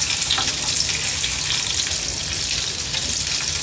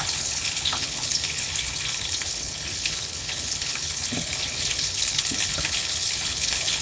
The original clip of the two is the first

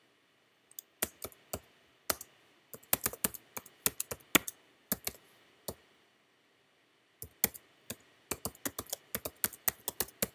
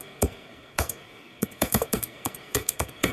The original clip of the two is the first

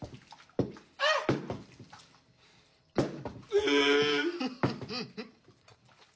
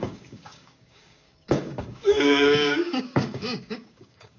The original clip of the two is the first